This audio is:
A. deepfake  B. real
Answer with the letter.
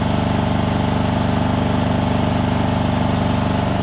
B